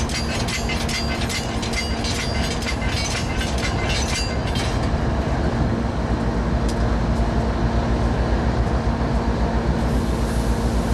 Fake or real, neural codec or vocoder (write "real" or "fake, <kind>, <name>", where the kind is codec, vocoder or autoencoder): real